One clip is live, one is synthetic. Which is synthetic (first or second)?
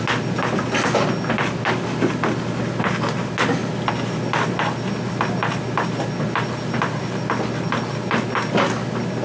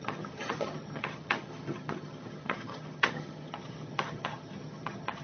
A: second